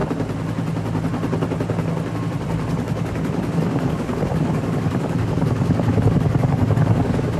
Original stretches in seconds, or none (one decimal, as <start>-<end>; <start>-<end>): 0.0-2.7